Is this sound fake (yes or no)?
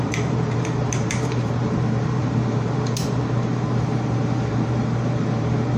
yes